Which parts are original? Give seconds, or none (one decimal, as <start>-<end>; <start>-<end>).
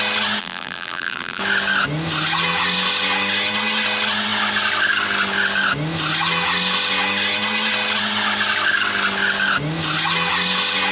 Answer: 0.0-0.4; 1.4-10.9